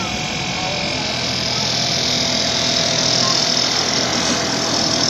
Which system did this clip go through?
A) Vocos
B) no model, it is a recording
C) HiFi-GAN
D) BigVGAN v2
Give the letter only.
B